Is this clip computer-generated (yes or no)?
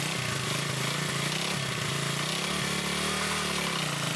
no